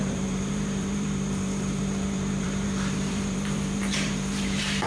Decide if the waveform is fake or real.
fake